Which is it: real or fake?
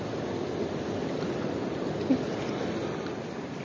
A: real